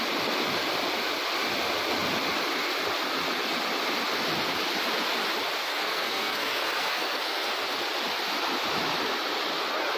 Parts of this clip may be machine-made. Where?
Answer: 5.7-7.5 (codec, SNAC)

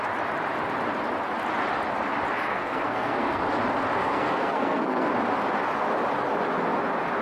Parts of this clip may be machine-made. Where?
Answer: 2.5-3.4 (codec, SNAC); 4.0-5.1

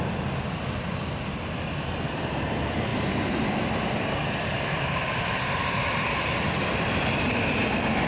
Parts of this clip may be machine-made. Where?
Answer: none